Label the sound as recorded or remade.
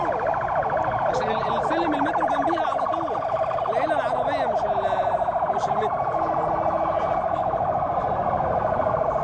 recorded